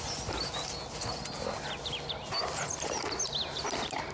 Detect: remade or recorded recorded